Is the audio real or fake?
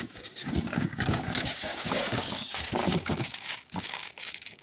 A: fake